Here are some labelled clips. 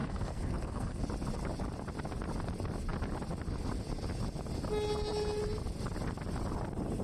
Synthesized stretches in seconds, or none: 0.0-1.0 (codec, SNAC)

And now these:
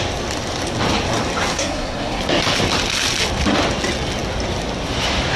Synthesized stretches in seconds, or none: 1.5-2.2 (codec, SNAC)